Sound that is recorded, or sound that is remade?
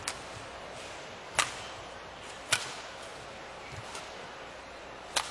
recorded